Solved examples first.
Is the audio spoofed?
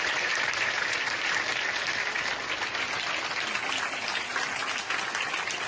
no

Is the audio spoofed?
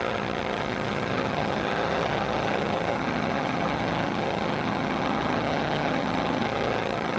yes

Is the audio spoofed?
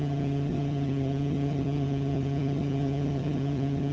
yes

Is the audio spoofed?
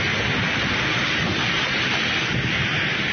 no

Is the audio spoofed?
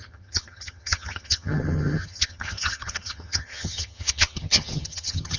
yes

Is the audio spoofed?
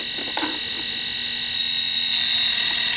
no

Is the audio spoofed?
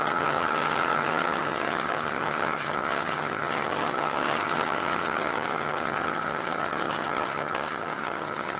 yes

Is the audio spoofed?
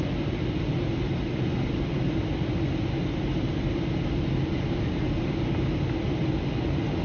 no